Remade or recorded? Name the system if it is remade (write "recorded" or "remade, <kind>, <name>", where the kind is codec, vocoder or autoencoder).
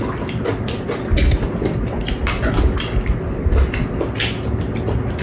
recorded